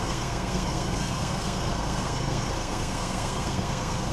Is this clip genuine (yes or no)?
no